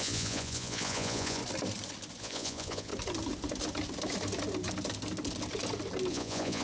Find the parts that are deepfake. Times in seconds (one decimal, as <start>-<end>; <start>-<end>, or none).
0.0-1.4; 2.2-2.9; 6.1-6.6